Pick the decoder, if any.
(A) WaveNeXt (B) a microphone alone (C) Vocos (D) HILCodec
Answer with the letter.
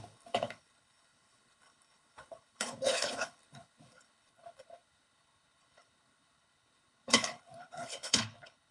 D